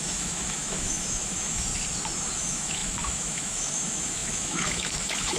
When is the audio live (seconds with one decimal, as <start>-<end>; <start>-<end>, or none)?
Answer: 1.7-2.4